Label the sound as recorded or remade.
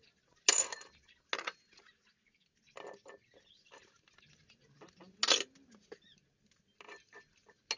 recorded